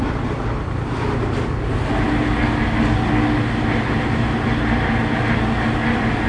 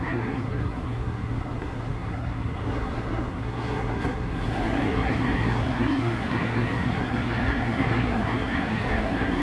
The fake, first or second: second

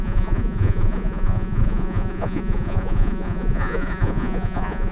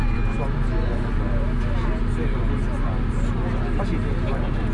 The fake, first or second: first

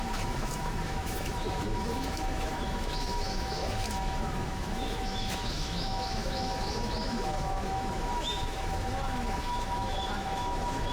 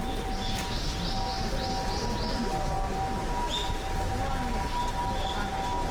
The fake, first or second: first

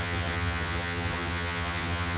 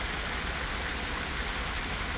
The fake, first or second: first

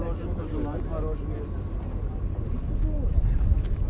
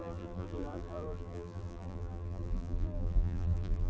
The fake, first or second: second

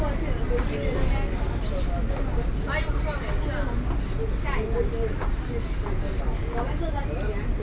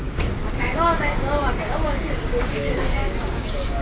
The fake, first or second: second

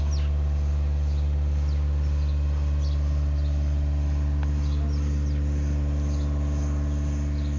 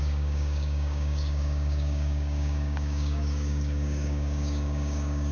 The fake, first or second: second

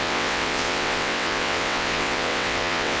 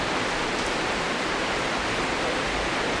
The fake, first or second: first